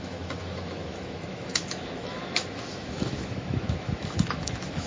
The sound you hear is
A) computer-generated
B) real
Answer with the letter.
A